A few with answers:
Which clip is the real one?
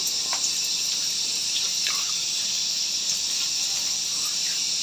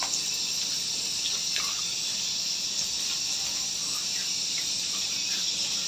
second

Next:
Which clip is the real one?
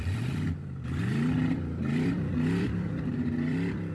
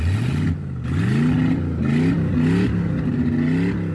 second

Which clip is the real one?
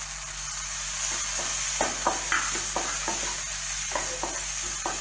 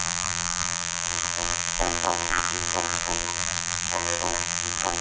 first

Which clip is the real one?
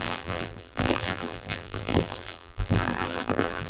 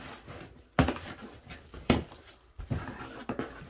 second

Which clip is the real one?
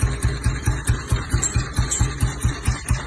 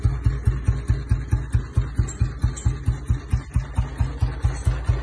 second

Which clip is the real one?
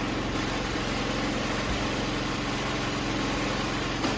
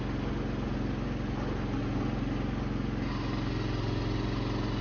second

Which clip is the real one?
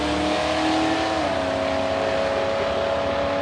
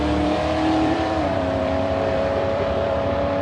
first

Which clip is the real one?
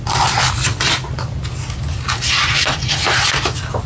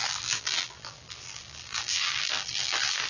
first